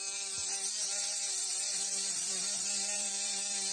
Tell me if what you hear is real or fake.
fake